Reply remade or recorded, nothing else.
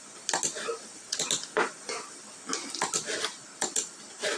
recorded